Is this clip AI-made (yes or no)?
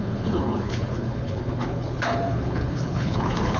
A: yes